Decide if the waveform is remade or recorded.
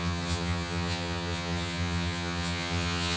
remade